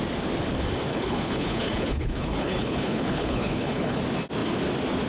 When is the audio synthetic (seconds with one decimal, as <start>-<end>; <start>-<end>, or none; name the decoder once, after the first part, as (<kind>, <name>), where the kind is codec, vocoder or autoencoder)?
0.9-4.0 (codec, HILCodec)